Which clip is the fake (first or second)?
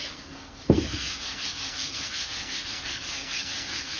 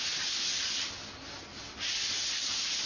first